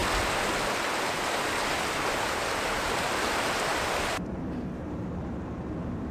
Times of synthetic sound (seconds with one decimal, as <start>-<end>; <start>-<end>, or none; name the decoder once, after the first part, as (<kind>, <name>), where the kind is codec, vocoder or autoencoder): 2.2-6.1 (vocoder, BigVGAN v2)